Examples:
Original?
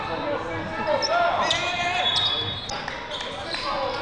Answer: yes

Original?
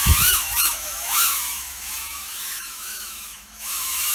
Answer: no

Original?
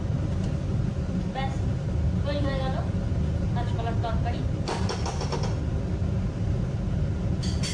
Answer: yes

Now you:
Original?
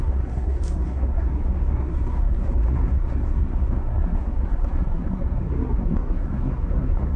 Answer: no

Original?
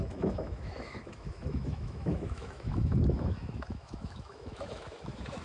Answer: no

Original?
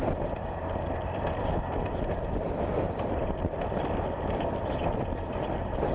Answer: no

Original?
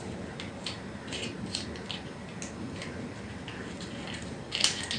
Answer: yes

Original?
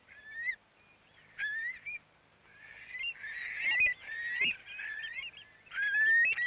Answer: yes